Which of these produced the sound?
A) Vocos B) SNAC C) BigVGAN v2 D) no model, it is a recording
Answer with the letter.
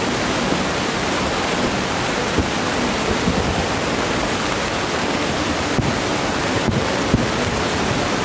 D